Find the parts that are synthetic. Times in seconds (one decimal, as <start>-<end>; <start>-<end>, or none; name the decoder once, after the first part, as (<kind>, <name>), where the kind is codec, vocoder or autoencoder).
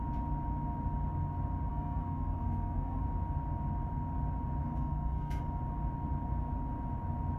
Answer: 1.7-3.0 (codec, SNAC); 4.6-5.4